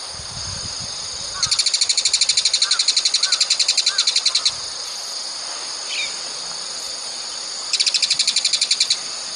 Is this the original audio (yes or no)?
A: yes